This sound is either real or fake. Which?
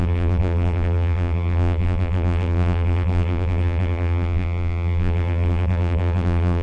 fake